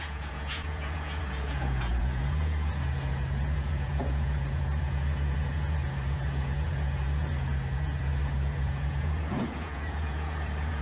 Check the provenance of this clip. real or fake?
fake